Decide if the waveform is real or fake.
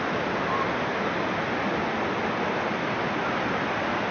real